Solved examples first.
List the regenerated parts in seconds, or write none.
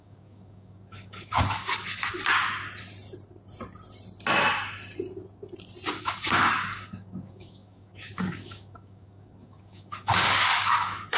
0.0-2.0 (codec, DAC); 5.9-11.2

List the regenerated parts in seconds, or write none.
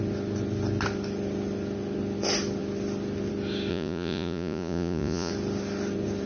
3.7-5.3 (vocoder, Vocos)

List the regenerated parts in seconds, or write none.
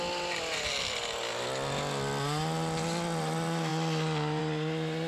none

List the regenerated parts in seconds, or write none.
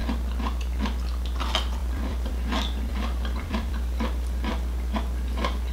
1.8-2.3 (vocoder, BigVGAN v2); 2.9-4.5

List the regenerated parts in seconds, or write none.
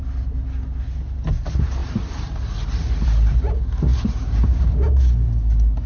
1.8-3.4 (vocoder, BigVGAN v2)